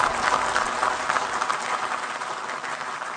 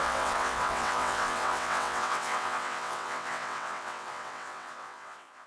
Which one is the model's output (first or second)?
second